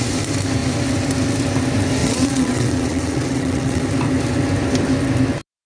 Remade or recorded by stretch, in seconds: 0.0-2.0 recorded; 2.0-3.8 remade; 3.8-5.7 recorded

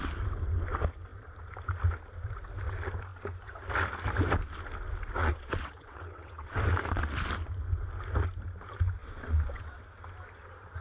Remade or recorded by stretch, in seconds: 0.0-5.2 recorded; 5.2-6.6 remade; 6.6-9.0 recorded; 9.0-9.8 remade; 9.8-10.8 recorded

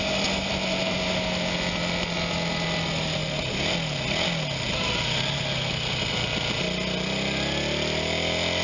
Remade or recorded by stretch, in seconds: 0.0-8.6 recorded